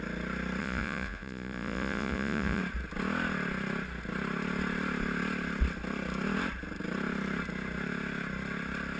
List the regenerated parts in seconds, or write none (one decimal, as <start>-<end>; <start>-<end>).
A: 0.6-2.6